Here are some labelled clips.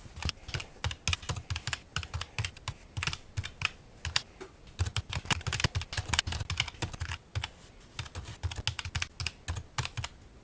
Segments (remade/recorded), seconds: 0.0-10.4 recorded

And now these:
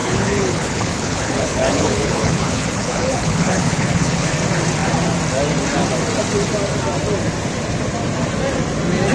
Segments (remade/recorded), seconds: 0.0-4.3 remade; 4.3-9.1 recorded